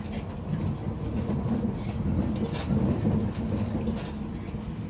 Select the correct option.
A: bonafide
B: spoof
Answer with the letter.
A